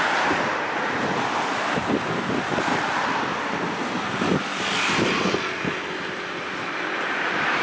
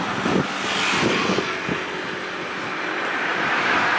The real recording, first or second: second